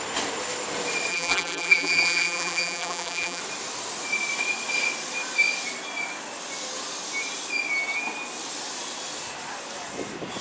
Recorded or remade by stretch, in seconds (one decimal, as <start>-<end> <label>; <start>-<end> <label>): 0.0-1.1 recorded; 1.1-3.4 remade; 3.4-10.4 recorded